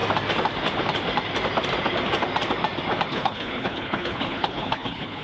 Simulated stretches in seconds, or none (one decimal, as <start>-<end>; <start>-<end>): 3.1-5.2